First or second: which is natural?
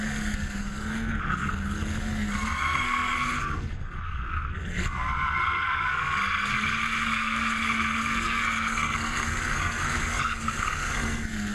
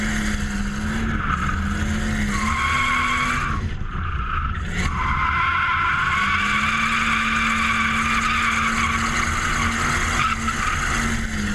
second